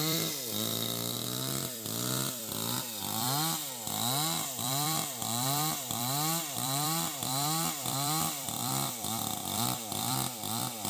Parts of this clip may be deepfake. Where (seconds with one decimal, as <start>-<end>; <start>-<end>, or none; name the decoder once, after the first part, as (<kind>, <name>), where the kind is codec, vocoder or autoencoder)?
0.0-3.6 (vocoder, BigVGAN v2); 4.6-10.9